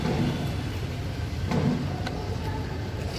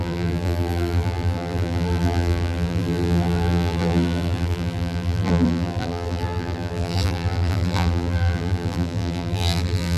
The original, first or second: first